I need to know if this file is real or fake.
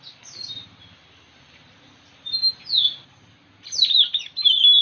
real